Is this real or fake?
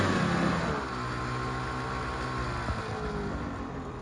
real